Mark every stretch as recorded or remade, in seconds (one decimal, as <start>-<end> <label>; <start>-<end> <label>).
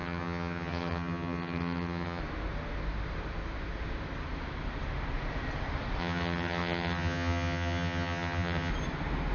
0.0-2.2 remade; 2.2-6.0 recorded; 6.0-8.7 remade; 8.7-9.3 recorded